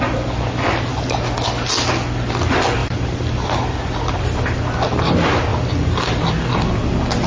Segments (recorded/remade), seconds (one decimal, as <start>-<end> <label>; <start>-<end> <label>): 0.0-0.9 recorded; 0.9-1.7 remade; 1.7-2.8 recorded; 2.8-4.2 remade; 4.2-5.5 recorded; 5.5-6.4 remade; 6.4-7.3 recorded

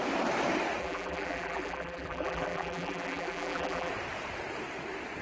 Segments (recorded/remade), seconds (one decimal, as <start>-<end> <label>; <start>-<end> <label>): 0.0-0.8 recorded; 0.8-3.9 remade; 3.9-5.2 recorded

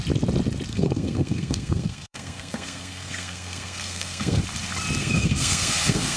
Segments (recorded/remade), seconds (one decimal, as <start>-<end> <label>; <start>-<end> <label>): 0.0-0.7 recorded; 0.7-4.4 remade; 4.4-5.0 recorded; 5.0-6.2 remade